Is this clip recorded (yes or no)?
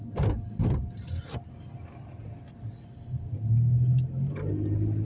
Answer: yes